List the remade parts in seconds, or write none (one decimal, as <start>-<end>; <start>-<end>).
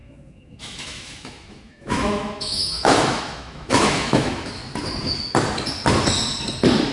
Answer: 0.0-4.6